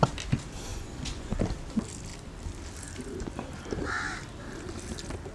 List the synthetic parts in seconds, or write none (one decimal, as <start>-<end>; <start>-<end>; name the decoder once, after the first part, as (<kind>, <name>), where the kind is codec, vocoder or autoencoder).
0.7-1.3 (vocoder, Vocos)